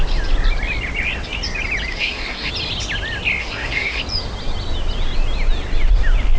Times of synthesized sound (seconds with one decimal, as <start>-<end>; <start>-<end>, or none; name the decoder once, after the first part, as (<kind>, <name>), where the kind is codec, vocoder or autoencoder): 1.9-2.5 (codec, SNAC); 3.4-4.0